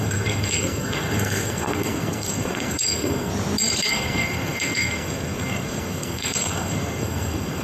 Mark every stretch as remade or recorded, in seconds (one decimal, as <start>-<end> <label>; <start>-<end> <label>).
0.0-3.3 remade; 3.3-3.9 recorded; 3.9-7.6 remade